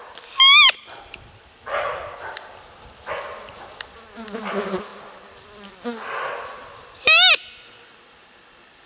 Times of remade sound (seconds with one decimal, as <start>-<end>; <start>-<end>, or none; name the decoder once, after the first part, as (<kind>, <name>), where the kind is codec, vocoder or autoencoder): none